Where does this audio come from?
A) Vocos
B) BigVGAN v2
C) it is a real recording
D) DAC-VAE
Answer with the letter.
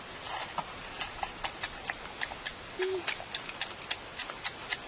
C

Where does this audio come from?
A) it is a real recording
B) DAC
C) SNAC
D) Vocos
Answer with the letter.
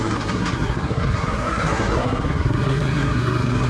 C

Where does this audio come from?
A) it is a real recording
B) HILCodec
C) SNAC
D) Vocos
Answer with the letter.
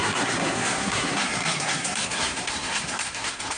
C